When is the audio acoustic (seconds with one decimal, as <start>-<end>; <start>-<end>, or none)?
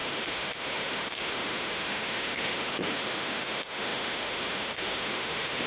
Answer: none